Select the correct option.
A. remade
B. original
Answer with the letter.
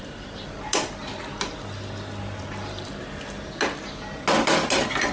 B